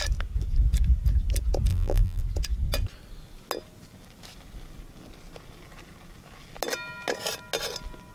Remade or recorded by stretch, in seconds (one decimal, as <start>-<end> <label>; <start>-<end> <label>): 0.0-1.7 recorded; 1.7-2.2 remade; 2.2-8.1 recorded

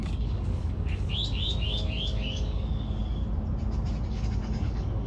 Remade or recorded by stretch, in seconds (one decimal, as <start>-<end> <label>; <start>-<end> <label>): 0.0-3.0 remade; 3.0-4.1 recorded; 4.1-5.1 remade

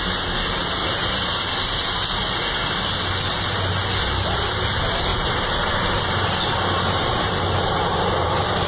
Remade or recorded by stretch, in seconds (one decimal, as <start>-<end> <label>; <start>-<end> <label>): 0.0-5.1 recorded; 5.1-5.7 remade; 5.7-7.0 recorded; 7.0-8.7 remade

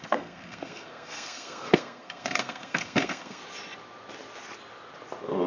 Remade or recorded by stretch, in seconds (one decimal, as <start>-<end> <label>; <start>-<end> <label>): 0.0-3.4 remade; 3.4-5.5 recorded

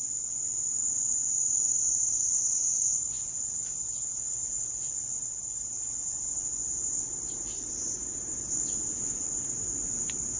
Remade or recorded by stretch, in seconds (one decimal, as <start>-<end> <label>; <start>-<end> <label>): 0.0-1.4 recorded; 1.4-3.1 remade; 3.1-10.4 recorded

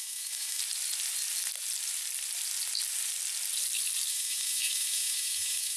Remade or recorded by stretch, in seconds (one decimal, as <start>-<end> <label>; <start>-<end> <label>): 0.0-0.6 remade; 0.6-4.1 recorded; 4.1-5.8 remade

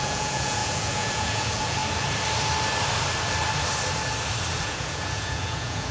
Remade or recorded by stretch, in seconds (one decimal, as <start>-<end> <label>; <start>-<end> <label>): 0.0-1.8 remade; 1.8-4.6 recorded; 4.6-5.9 remade

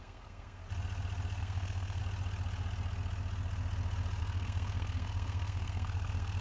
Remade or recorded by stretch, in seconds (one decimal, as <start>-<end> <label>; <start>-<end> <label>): 0.0-0.6 remade; 0.6-1.4 recorded; 1.4-2.0 remade; 2.0-4.2 recorded; 4.2-6.4 remade